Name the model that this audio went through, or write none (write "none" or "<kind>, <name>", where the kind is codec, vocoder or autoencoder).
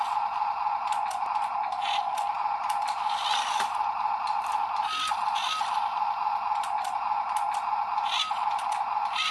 none